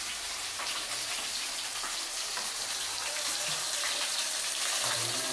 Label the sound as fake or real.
fake